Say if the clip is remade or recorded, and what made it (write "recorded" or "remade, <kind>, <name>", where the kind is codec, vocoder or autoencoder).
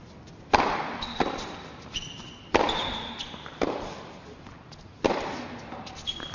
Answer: recorded